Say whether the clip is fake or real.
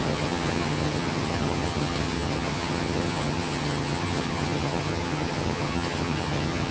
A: fake